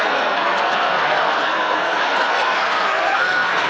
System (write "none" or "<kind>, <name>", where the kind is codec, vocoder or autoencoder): codec, SNAC